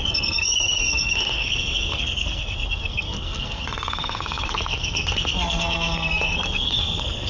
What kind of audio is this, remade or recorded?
remade